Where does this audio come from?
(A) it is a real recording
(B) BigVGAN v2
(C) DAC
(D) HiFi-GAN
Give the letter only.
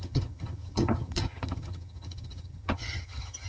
D